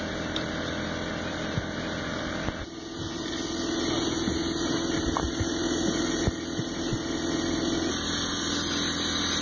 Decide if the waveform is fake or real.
real